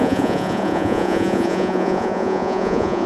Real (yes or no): no